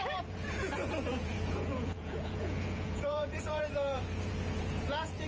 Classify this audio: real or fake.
fake